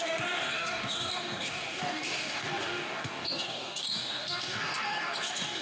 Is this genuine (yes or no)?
no